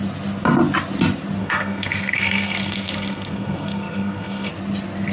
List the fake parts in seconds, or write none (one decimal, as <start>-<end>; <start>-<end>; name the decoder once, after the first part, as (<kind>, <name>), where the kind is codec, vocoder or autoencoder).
1.4-4.5 (codec, SNAC)